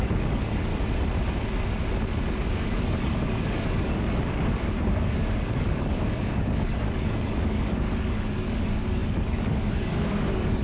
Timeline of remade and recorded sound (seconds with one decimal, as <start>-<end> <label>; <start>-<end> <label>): 0.0-0.7 remade; 0.7-2.5 recorded; 2.5-10.6 remade